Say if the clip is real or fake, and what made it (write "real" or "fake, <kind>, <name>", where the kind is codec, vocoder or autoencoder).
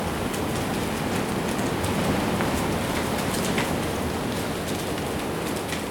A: real